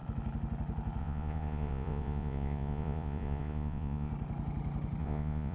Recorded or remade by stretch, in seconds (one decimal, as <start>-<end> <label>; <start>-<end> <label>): 0.0-1.0 recorded; 1.0-4.1 remade; 4.1-5.0 recorded; 5.0-5.5 remade